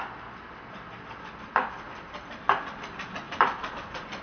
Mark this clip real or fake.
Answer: real